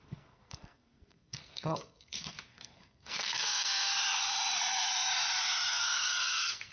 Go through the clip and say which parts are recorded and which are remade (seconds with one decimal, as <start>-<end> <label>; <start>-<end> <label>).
0.0-3.9 remade; 3.9-5.7 recorded; 5.7-6.7 remade